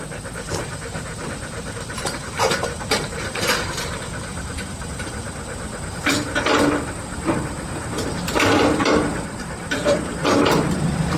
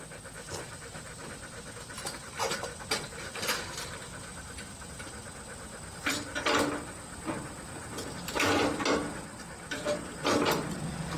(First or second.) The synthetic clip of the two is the first